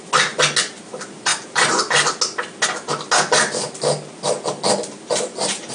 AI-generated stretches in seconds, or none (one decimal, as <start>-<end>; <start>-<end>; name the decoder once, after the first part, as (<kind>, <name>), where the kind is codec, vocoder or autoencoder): none